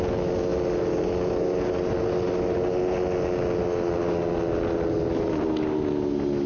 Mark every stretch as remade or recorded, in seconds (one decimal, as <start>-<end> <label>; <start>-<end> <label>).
0.0-6.5 recorded

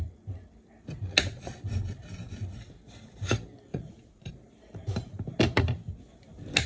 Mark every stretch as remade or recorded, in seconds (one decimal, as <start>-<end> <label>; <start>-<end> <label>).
0.0-3.7 recorded; 3.7-4.3 remade; 4.3-6.7 recorded

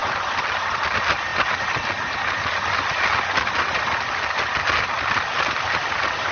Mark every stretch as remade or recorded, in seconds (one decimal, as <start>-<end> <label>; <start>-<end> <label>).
0.0-6.3 recorded